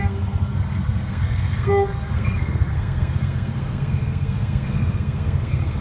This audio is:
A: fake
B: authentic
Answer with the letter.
A